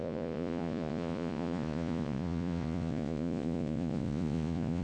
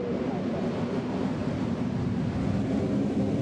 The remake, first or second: first